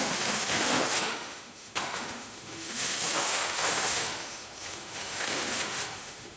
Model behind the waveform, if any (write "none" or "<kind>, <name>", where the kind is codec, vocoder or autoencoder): autoencoder, DAC-VAE